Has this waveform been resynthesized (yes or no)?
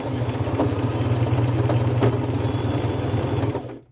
no